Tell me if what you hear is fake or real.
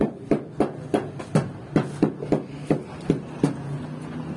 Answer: real